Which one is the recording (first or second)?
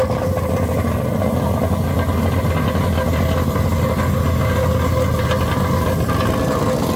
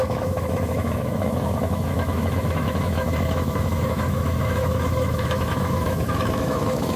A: first